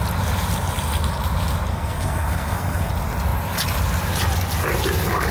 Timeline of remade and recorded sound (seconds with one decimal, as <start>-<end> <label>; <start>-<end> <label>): 0.0-1.7 recorded; 1.7-2.9 remade; 2.9-5.3 recorded